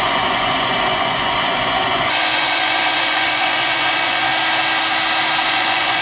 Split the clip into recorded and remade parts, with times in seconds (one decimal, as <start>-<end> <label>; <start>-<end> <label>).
0.0-4.3 remade; 4.3-5.5 recorded; 5.5-6.0 remade